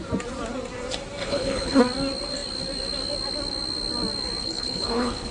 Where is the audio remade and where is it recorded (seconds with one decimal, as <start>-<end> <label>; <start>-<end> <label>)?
0.0-1.2 recorded; 1.2-1.8 remade; 1.8-4.4 recorded; 4.4-5.3 remade